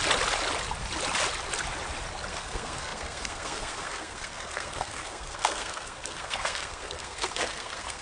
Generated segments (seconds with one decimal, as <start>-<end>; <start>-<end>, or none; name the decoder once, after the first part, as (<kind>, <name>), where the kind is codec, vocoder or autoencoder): 2.3-8.0 (codec, SNAC)